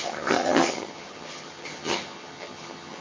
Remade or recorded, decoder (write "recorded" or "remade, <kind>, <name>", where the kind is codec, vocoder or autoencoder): remade, vocoder, HiFi-GAN